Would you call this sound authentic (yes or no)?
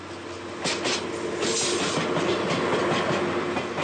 yes